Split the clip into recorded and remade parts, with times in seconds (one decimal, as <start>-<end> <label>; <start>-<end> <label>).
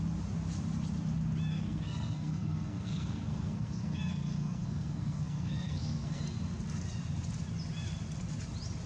0.0-1.5 recorded; 1.5-6.2 remade; 6.2-8.9 recorded